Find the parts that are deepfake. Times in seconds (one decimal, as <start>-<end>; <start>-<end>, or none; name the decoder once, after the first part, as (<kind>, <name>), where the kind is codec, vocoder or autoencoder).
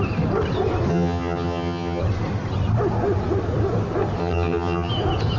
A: 0.9-2.0 (vocoder, HiFi-GAN); 4.2-4.9